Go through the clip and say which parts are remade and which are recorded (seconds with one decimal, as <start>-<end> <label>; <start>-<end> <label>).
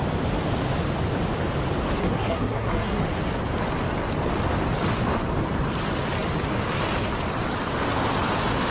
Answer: 0.0-2.0 recorded; 2.0-3.0 remade; 3.0-8.7 recorded